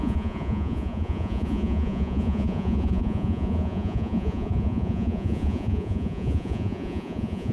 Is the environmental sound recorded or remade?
remade